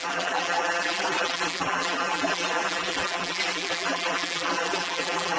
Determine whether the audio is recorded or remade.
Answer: remade